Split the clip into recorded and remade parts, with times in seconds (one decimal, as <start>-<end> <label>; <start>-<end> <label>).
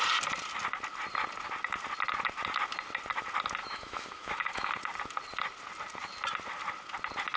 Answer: 0.0-3.6 recorded; 3.6-4.7 remade; 4.7-7.4 recorded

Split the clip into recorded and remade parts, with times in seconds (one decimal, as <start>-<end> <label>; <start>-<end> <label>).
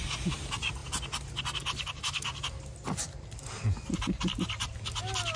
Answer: 0.0-5.4 recorded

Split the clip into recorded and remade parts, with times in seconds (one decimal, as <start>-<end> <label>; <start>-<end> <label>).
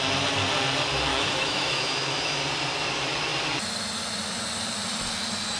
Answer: 0.0-1.1 recorded; 1.1-2.4 remade; 2.4-5.6 recorded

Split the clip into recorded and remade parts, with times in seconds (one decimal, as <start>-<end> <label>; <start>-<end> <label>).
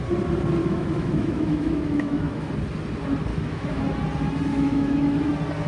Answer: 0.0-0.6 recorded; 0.6-2.5 remade; 2.5-3.3 recorded; 3.3-3.8 remade; 3.8-4.5 recorded; 4.5-5.3 remade; 5.3-5.7 recorded